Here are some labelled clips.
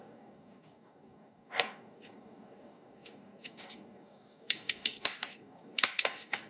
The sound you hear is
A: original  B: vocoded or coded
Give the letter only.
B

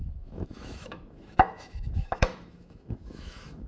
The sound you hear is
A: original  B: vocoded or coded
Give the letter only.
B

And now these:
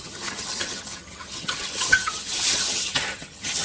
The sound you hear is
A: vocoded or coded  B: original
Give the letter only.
A